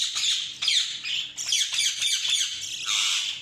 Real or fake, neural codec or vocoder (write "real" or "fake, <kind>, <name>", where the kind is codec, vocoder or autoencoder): real